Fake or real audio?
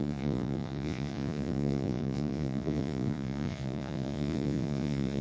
fake